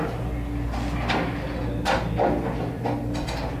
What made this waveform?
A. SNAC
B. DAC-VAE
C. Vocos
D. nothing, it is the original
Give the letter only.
D